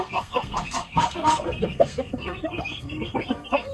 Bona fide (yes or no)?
no